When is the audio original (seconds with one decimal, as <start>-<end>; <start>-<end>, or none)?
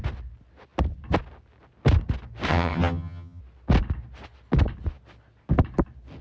0.0-2.5; 3.4-6.2